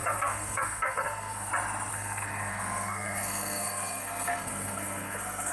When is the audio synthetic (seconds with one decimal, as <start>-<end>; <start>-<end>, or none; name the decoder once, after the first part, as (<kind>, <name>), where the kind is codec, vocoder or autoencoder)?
0.0-1.5 (codec, SNAC); 1.9-5.5

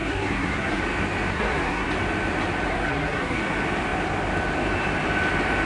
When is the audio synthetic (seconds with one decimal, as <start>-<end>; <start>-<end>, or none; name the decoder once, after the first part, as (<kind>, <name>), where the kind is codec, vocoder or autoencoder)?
0.0-0.8 (codec, SNAC); 1.3-1.9; 2.7-3.4